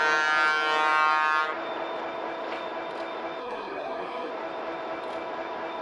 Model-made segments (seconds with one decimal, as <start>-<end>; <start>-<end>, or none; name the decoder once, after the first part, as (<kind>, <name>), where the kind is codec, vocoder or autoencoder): 3.4-4.3 (codec, SNAC)